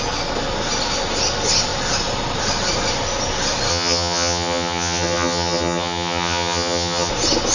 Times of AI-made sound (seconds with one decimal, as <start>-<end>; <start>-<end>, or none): 3.7-7.1